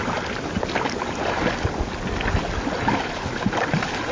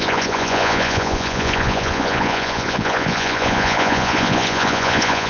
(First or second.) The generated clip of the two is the second